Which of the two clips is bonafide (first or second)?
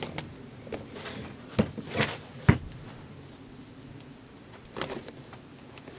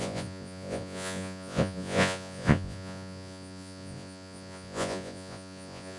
first